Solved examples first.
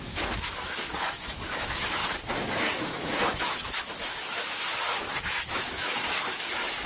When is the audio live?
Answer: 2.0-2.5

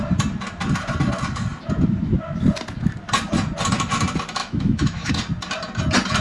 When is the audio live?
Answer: 0.0-4.4; 5.1-6.2

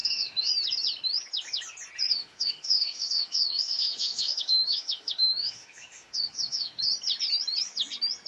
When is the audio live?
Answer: 0.5-2.1; 6.8-8.3

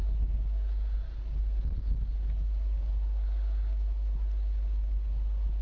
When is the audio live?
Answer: 0.0-5.6